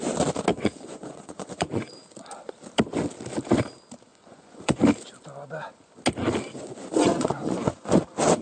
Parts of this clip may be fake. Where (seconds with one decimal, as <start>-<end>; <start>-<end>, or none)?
0.5-1.9; 4.1-4.8; 6.5-7.9